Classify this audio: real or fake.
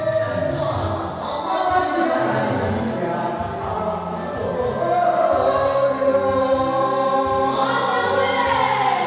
real